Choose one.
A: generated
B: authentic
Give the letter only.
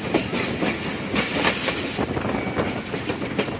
B